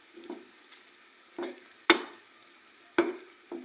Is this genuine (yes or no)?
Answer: yes